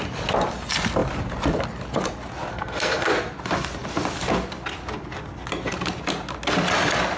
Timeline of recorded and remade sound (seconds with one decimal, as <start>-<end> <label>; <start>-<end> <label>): 0.0-2.5 recorded; 2.5-3.1 remade; 3.1-7.2 recorded